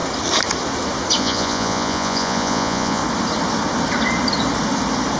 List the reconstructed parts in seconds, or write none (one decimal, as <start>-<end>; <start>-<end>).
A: 1.2-3.0